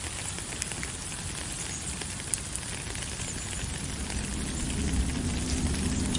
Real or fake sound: real